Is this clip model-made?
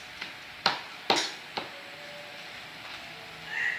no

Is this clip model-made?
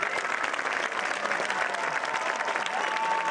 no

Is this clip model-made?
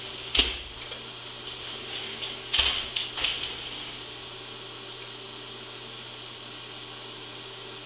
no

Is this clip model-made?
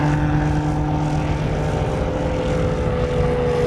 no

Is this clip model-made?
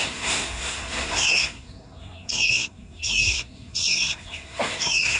yes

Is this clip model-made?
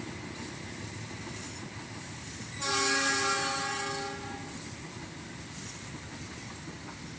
no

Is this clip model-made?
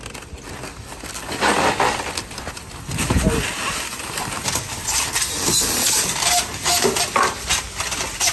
no